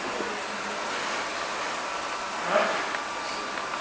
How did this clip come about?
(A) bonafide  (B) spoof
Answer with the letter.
A